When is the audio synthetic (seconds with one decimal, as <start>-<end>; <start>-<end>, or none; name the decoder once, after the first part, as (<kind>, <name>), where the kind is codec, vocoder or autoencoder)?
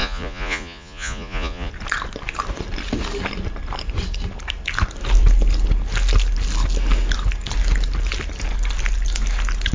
0.0-1.7 (vocoder, Vocos)